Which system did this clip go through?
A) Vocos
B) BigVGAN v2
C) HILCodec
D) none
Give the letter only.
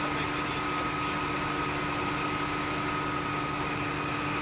D